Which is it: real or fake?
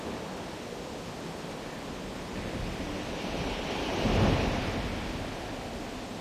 real